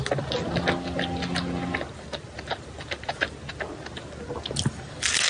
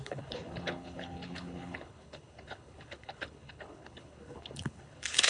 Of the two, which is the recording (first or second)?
first